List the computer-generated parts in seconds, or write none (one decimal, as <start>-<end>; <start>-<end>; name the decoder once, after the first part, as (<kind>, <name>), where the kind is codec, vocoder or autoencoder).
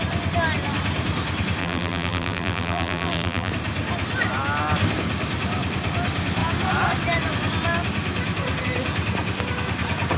1.6-3.5 (vocoder, BigVGAN v2)